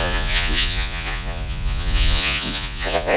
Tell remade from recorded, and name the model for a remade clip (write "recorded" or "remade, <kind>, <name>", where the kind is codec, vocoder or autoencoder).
remade, vocoder, Vocos